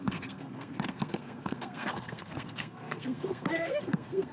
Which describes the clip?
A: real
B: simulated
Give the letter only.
B